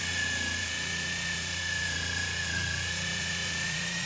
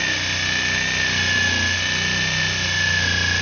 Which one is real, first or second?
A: second